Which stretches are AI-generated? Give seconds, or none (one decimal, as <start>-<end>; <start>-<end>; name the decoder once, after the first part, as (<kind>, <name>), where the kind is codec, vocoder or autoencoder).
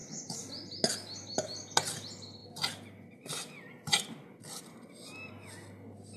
none